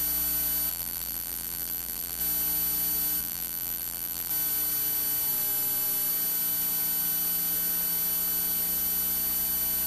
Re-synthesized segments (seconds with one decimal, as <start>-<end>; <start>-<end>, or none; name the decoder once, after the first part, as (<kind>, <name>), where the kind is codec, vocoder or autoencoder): 0.7-2.2 (vocoder, BigVGAN v2); 3.2-4.3